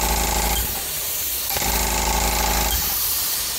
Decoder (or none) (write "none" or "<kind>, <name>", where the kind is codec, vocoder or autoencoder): none